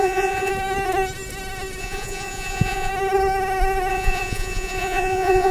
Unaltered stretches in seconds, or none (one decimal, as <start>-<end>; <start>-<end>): 0.5-1.8; 2.9-3.9